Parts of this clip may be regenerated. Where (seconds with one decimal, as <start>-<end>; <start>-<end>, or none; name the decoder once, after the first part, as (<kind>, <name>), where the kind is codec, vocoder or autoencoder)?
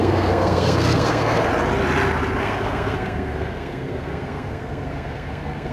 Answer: 0.0-1.5 (codec, SNAC); 2.4-5.7